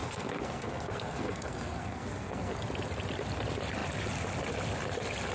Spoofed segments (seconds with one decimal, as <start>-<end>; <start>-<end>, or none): 0.0-2.5